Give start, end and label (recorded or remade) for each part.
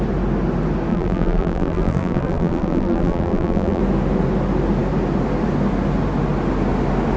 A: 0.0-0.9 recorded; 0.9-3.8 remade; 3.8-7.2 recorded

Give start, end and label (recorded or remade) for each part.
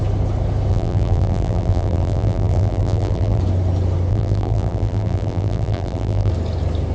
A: 0.0-0.7 recorded; 0.7-3.4 remade; 3.4-4.1 recorded; 4.1-6.3 remade; 6.3-6.9 recorded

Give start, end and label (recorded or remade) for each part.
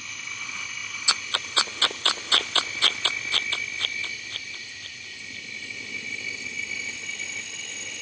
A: 0.0-8.0 recorded